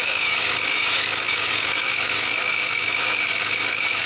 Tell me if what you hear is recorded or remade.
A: remade